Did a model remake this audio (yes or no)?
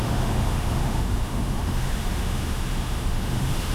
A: yes